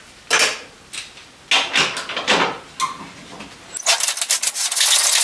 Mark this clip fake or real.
real